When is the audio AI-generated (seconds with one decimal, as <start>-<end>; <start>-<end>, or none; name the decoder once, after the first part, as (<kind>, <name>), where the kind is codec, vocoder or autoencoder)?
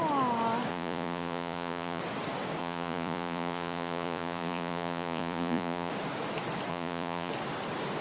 0.7-2.0 (vocoder, Vocos); 2.6-5.9; 6.7-7.3